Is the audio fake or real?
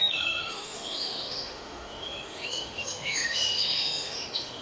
fake